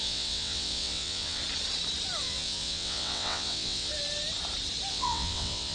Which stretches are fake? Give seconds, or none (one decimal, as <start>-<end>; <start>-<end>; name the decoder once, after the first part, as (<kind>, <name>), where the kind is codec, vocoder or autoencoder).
0.0-1.4 (vocoder, WaveNeXt); 2.2-3.9; 4.9-5.7